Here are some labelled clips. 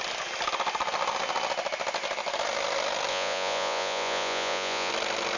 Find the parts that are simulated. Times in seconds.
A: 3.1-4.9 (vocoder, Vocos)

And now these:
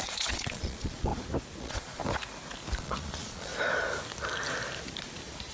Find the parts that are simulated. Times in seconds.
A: 0.0-1.1 (vocoder, Vocos); 1.6-2.0; 2.8-3.5

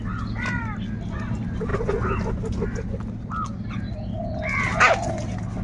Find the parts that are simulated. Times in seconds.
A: none

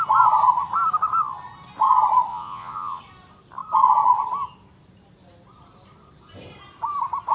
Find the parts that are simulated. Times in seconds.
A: 2.3-3.0 (vocoder, Vocos)

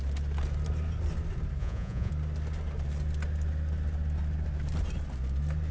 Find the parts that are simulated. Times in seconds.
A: 1.6-2.1 (vocoder, Vocos)

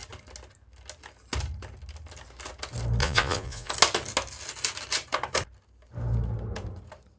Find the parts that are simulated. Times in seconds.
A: 3.0-3.7 (vocoder, Vocos)

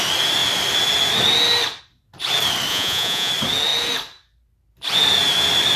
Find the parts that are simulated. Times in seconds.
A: 2.7-3.3 (vocoder, Vocos)